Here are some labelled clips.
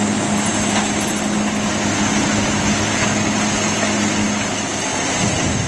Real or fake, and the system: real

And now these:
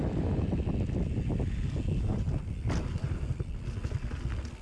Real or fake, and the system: real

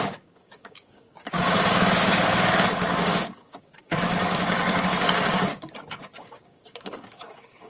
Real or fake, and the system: fake, codec, DAC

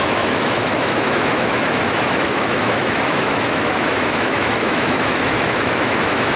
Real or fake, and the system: fake, autoencoder, DAC-VAE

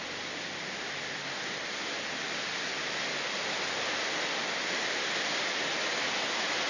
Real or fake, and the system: real